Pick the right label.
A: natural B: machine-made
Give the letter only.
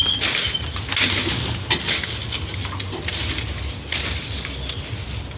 A